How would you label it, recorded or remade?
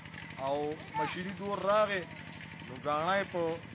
recorded